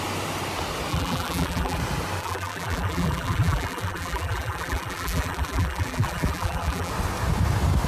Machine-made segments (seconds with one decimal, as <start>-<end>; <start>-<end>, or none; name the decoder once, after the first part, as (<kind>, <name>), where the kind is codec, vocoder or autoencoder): 0.9-1.8 (vocoder, BigVGAN v2); 2.2-6.9